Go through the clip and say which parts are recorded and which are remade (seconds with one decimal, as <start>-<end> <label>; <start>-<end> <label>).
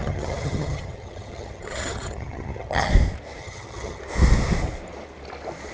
0.0-2.9 remade; 2.9-3.4 recorded; 3.4-4.0 remade; 4.0-5.7 recorded